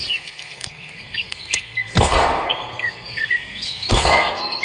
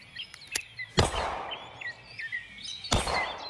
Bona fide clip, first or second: second